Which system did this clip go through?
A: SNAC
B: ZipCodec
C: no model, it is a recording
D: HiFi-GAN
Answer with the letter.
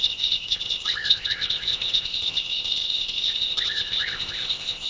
B